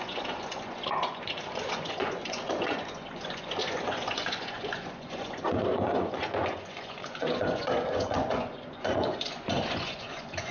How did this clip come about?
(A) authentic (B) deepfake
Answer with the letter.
B